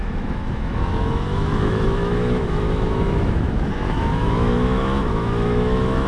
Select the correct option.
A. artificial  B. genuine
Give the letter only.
A